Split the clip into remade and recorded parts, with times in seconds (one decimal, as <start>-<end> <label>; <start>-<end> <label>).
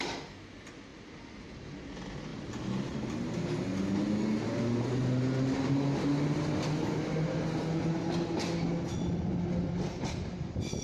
0.0-10.8 recorded